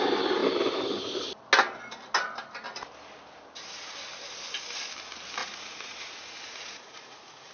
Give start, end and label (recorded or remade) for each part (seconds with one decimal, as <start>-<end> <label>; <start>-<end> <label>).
0.0-5.4 recorded; 5.4-7.5 remade